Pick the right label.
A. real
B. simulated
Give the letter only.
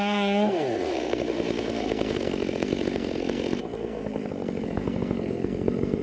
B